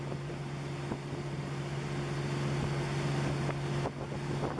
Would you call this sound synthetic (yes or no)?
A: no